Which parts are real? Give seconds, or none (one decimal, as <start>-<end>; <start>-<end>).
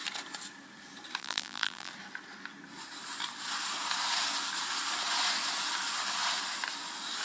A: 0.0-1.2; 1.9-7.2